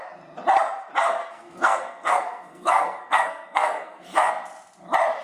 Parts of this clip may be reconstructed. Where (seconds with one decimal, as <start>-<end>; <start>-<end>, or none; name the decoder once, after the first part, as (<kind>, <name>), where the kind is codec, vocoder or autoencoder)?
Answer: 1.2-4.3 (codec, SNAC)